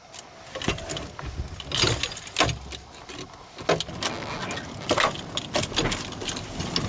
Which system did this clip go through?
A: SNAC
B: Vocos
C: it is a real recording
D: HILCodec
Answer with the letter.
C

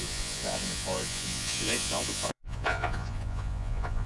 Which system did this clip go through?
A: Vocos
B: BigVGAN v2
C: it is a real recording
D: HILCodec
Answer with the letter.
A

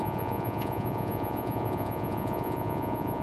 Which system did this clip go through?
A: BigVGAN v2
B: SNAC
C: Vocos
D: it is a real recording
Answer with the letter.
C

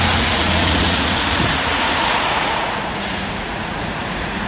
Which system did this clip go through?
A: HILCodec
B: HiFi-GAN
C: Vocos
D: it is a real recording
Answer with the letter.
C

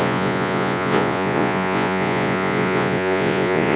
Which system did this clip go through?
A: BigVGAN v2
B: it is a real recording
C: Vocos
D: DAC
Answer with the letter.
C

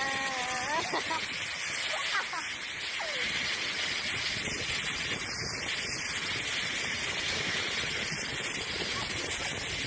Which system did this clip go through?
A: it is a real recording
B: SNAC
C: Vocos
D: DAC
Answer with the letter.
A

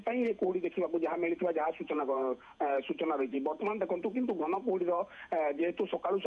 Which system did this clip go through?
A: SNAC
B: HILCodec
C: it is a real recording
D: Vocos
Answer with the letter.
D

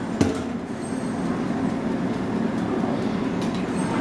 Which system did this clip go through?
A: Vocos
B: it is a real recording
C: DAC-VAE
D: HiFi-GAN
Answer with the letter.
B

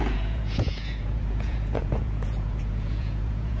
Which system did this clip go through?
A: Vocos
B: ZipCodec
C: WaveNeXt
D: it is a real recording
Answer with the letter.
A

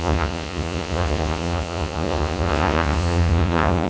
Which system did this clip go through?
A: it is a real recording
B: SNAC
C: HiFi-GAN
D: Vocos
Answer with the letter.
D